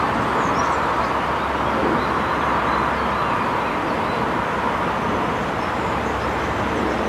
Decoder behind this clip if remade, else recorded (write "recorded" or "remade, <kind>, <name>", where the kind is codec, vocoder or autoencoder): recorded